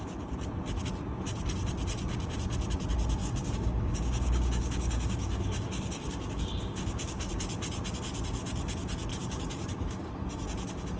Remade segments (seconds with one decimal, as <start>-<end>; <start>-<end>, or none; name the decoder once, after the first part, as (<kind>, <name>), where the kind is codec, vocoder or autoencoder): 3.2-7.3 (codec, DAC); 9.1-10.1